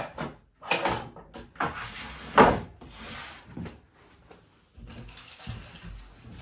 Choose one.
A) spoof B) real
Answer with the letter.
B